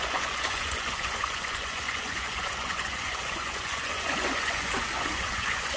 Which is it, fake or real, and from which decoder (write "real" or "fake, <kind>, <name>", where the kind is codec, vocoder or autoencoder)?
fake, vocoder, Vocos